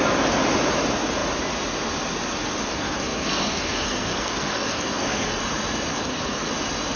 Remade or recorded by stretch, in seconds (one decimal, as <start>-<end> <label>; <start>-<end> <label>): 0.0-2.7 recorded; 2.7-5.4 remade; 5.4-5.9 recorded; 5.9-6.5 remade; 6.5-7.0 recorded

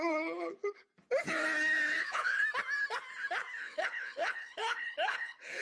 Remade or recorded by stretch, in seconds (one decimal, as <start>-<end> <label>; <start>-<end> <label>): 0.0-0.9 remade; 0.9-2.0 recorded; 2.0-2.4 remade; 2.4-3.6 recorded; 3.6-5.6 remade

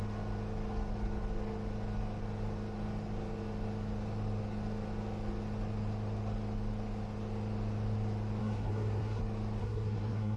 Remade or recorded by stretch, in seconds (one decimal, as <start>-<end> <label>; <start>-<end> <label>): 0.0-8.4 recorded; 8.4-9.2 remade; 9.2-9.6 recorded; 9.6-10.4 remade

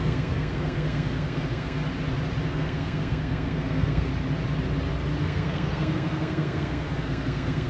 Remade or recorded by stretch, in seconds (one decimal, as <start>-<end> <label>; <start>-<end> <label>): 0.0-1.8 remade; 1.8-2.5 recorded; 2.5-4.1 remade; 4.1-5.2 recorded; 5.2-7.7 remade

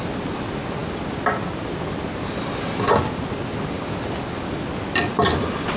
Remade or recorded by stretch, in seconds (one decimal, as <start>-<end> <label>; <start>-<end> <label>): 0.0-5.8 recorded